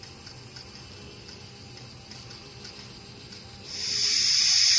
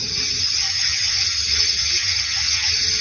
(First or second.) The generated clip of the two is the second